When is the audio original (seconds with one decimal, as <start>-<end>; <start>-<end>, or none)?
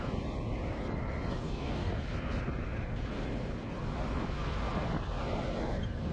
0.0-1.4; 2.0-6.1